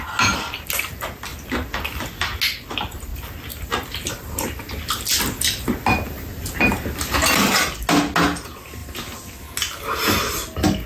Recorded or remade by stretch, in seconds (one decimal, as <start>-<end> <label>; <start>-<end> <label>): 0.0-1.3 recorded; 1.3-2.1 remade; 2.1-3.1 recorded; 3.1-4.1 remade; 4.1-10.9 recorded